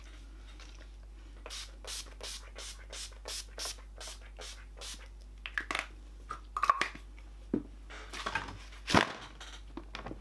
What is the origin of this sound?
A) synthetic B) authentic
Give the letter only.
B